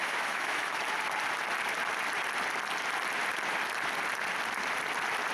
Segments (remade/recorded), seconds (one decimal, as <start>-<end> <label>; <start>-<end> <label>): 0.0-0.8 remade; 0.8-5.3 recorded